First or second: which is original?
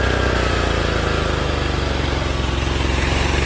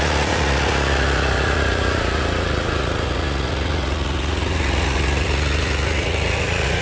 first